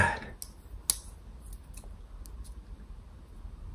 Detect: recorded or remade recorded